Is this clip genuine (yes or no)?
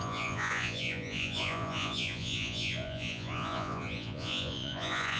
no